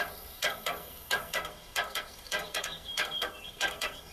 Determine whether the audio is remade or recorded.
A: remade